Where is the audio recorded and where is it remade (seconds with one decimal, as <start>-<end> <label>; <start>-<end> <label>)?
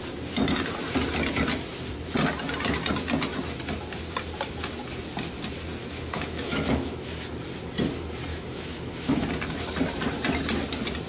0.0-5.8 recorded; 5.8-7.3 remade; 7.3-8.3 recorded; 8.3-9.3 remade; 9.3-11.1 recorded